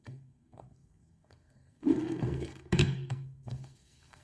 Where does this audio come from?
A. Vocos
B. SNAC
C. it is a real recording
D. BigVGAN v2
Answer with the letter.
B